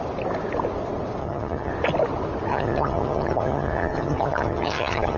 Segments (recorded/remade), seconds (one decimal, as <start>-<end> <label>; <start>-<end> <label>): 0.0-1.2 recorded; 1.2-1.7 remade; 1.7-2.5 recorded; 2.5-5.2 remade